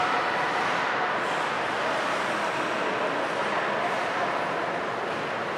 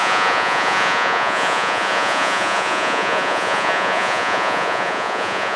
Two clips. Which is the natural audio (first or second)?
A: first